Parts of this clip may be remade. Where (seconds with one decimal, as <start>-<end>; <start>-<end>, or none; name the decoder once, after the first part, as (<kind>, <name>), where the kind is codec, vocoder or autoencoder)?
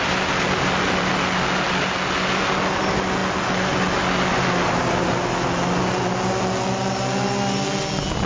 none